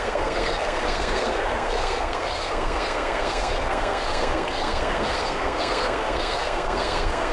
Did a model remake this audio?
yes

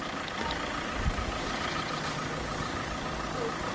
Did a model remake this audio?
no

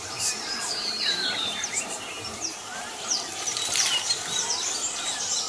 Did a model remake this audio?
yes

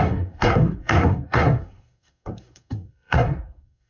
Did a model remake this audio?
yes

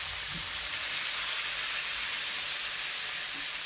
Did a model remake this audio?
no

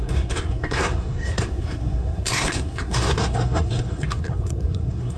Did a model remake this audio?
yes